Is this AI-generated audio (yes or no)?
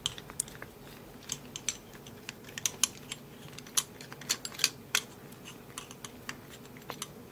no